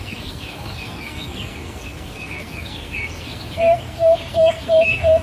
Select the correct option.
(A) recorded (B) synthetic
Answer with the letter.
B